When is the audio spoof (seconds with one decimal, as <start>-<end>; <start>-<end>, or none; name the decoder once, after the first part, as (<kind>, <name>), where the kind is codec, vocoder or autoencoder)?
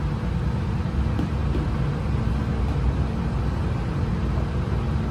none